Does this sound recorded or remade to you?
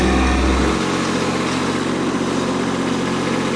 recorded